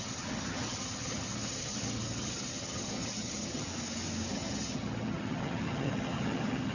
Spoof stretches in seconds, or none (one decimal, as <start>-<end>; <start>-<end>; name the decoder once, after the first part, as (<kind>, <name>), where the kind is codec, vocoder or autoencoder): 0.0-3.7 (vocoder, HiFi-GAN); 4.3-6.7